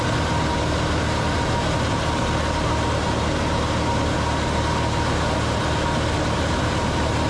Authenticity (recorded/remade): recorded